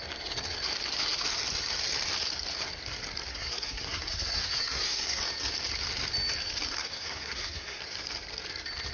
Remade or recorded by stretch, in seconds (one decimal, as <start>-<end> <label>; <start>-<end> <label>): 0.0-3.3 recorded; 3.3-5.2 remade; 5.2-6.8 recorded; 6.8-7.8 remade; 7.8-8.9 recorded